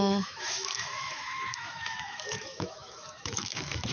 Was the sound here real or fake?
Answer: fake